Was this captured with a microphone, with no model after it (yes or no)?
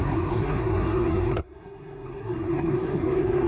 no